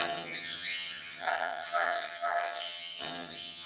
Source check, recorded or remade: remade